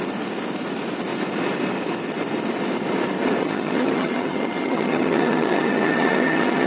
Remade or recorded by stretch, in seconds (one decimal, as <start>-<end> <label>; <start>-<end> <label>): 0.0-3.4 recorded; 3.4-6.7 remade